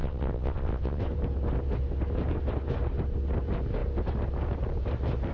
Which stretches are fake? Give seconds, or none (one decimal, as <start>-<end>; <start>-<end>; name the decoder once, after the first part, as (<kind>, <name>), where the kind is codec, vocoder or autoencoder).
0.0-1.0 (vocoder, WaveNeXt)